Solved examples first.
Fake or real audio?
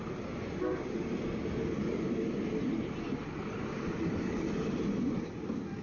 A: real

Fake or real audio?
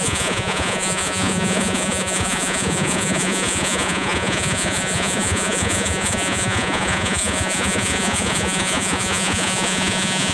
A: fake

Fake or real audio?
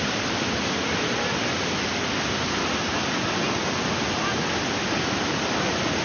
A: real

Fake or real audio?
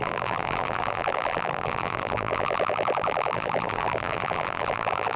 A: fake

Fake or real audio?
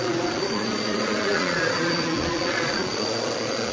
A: fake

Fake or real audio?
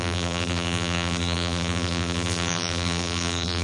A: fake